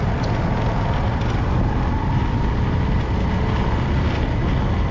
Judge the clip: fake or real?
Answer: real